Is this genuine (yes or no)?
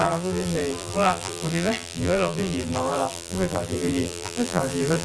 no